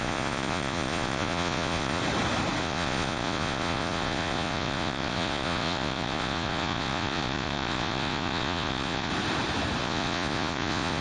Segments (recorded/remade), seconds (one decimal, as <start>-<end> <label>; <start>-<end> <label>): 0.0-2.0 remade; 2.0-2.6 recorded; 2.6-9.1 remade; 9.1-9.8 recorded; 9.8-11.0 remade